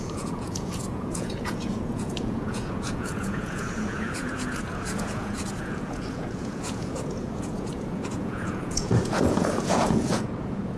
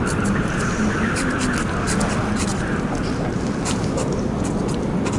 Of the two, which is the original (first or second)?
second